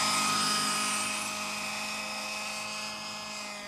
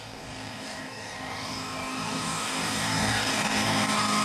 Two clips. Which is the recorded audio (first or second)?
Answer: first